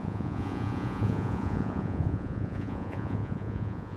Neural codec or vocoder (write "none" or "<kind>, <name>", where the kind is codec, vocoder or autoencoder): vocoder, Vocos